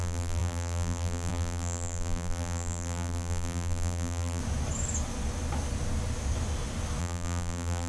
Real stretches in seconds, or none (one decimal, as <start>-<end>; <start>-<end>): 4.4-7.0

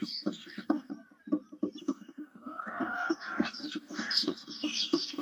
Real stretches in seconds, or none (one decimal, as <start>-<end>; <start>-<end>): 0.9-1.8

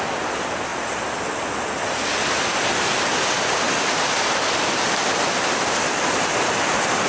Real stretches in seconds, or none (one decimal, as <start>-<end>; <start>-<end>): 0.0-7.1

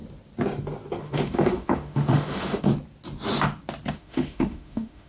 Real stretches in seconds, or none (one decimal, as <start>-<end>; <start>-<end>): 0.0-1.0; 2.7-3.9

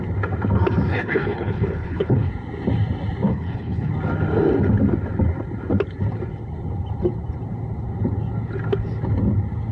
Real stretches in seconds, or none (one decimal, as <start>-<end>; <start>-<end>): 0.0-0.9; 2.3-3.3; 3.9-9.7